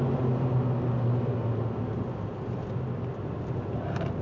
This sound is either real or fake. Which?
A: real